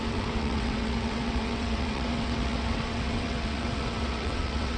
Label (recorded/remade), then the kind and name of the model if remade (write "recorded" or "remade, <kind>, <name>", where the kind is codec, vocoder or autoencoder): remade, vocoder, WaveNeXt